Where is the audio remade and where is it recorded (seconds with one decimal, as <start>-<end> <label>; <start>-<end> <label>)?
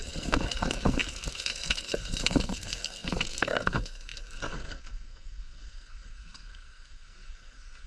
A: 0.0-7.9 remade